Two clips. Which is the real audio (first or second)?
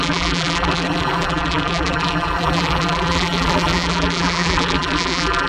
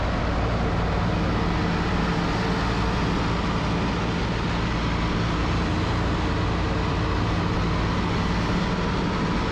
second